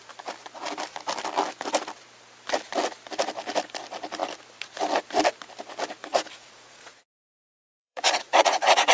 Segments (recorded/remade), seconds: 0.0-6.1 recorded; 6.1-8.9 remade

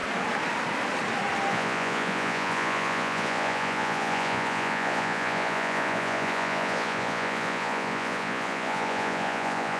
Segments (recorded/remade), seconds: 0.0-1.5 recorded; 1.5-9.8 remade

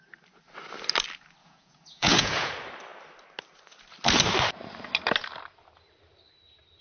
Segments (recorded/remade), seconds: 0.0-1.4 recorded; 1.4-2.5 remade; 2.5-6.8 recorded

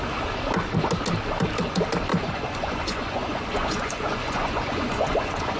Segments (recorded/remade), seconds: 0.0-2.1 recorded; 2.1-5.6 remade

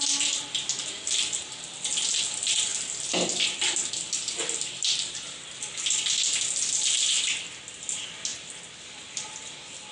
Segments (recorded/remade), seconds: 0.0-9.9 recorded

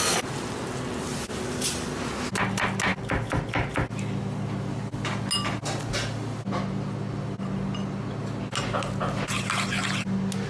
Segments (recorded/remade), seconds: 0.0-10.5 recorded

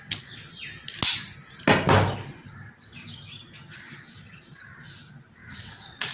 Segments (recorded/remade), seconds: 0.0-5.4 recorded; 5.4-6.1 remade

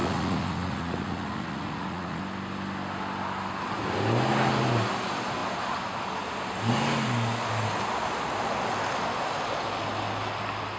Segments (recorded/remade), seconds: 0.0-2.2 remade; 2.2-10.8 recorded